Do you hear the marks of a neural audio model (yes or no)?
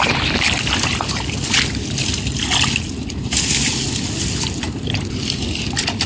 no